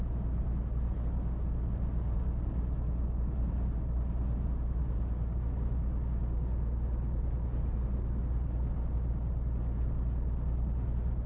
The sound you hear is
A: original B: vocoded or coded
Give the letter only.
A